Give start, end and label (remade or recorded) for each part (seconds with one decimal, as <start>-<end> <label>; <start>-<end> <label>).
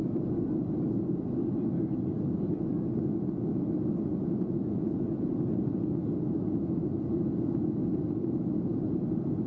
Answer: 0.0-4.1 recorded; 4.1-5.3 remade; 5.3-9.5 recorded